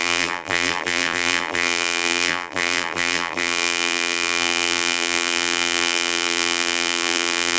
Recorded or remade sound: remade